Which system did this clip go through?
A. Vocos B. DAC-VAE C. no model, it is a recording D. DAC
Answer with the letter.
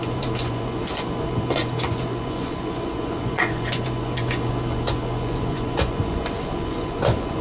A